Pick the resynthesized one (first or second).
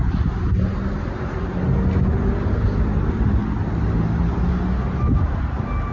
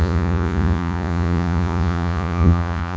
second